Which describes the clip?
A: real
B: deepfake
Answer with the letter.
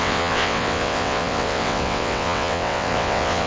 B